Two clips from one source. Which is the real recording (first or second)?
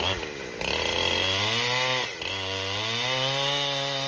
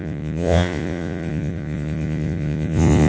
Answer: first